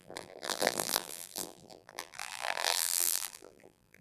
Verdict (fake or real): fake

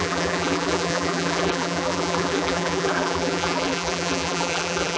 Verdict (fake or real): fake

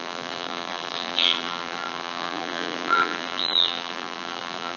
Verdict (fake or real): fake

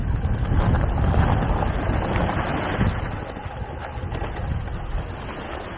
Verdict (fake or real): real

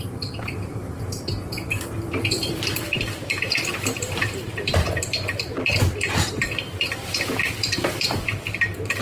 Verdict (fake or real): fake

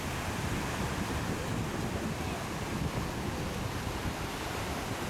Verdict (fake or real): real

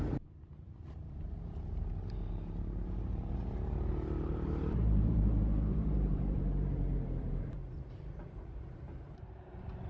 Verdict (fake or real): fake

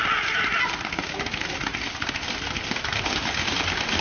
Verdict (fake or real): real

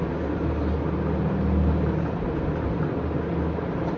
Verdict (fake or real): real